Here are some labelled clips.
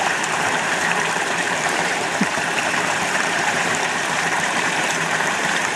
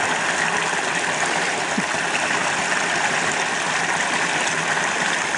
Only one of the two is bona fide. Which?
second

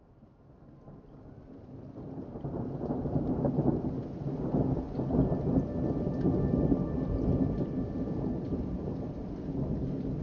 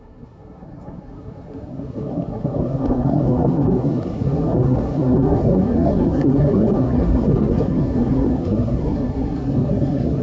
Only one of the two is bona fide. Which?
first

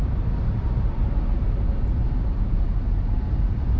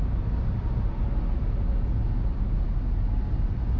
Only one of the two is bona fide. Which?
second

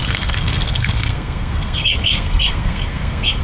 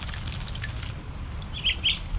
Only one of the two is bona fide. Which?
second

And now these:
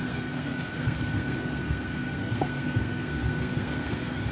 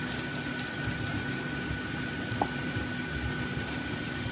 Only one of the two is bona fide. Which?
second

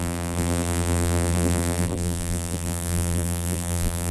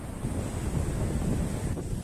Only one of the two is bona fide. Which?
second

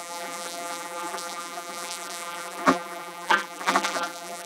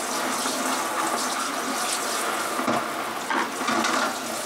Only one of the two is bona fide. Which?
second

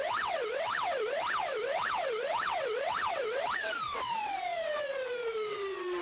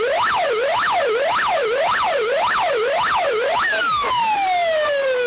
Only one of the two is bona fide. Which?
second